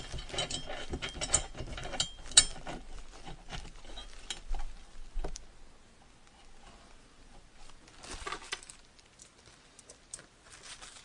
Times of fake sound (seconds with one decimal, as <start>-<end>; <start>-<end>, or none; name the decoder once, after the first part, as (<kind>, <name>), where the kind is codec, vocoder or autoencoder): none